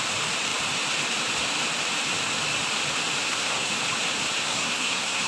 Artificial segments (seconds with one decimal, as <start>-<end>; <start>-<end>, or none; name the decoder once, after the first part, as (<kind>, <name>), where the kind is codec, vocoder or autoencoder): 3.2-3.7 (codec, SNAC); 4.4-5.3